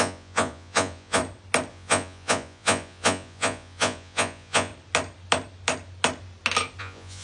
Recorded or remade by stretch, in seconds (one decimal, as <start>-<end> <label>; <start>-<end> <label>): 0.0-1.2 remade; 1.2-1.7 recorded; 1.7-4.7 remade; 4.7-6.8 recorded; 6.8-7.2 remade